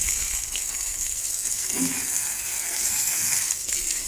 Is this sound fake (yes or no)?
yes